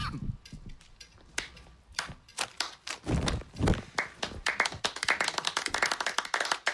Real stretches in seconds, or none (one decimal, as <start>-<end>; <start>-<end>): 0.0-2.3; 6.3-6.7